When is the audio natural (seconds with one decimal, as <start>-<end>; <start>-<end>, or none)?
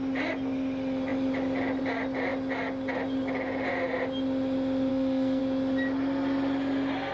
0.0-4.9; 5.4-7.1